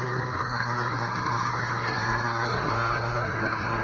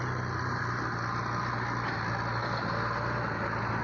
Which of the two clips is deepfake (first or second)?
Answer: first